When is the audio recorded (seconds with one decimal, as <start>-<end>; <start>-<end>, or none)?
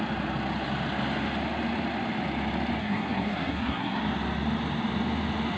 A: 0.0-2.8; 4.0-5.6